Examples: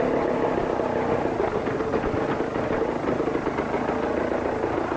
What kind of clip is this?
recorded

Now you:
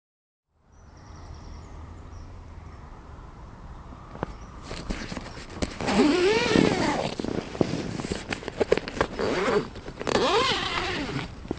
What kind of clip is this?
remade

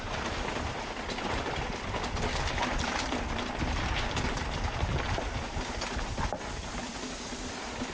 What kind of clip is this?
recorded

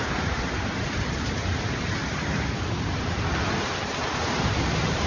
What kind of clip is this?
remade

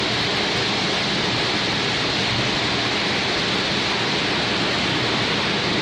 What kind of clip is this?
recorded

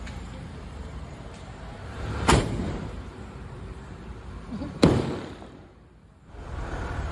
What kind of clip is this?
remade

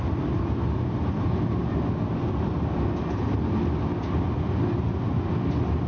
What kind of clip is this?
recorded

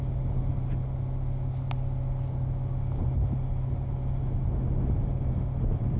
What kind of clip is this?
recorded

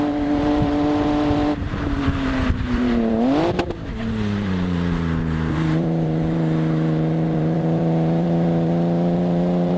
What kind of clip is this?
remade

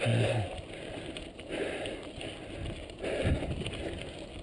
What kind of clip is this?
recorded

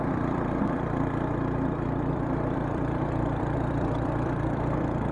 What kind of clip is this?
remade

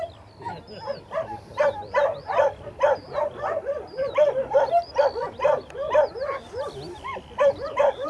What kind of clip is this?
remade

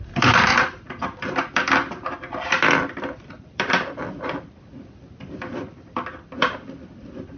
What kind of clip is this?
remade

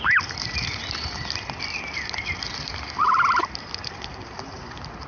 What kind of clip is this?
remade